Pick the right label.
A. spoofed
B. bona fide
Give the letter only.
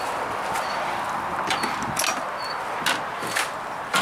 B